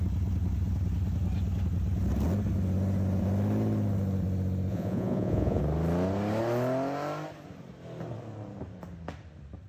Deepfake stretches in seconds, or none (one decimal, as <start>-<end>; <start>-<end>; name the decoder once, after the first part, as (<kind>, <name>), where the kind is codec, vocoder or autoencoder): 4.7-5.6 (vocoder, Vocos)